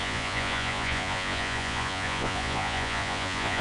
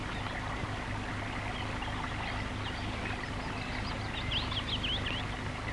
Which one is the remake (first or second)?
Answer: first